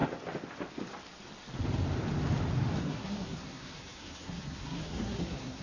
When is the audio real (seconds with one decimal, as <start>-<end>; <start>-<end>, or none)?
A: 0.0-2.8